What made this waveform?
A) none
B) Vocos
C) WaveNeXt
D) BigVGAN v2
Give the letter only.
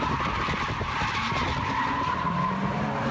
A